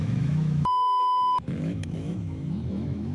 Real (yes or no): no